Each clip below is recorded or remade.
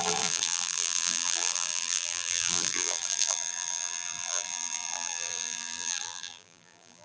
remade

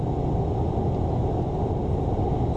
recorded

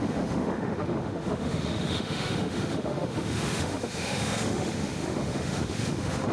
remade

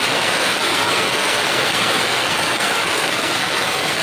remade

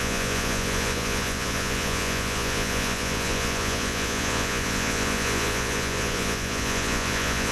remade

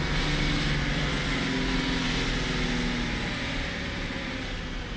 recorded